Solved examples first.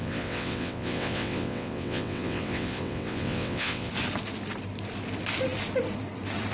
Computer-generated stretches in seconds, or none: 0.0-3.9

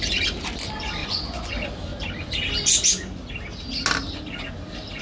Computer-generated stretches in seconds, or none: 1.0-1.5